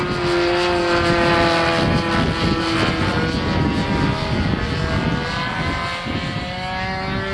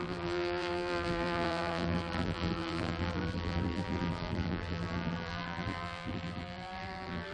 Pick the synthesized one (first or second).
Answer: second